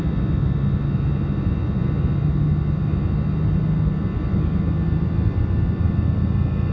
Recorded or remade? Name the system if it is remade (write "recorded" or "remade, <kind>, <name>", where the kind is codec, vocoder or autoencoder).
recorded